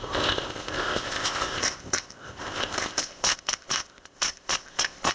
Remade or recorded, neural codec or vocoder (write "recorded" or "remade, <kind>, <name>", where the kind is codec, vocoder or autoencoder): remade, codec, ZipCodec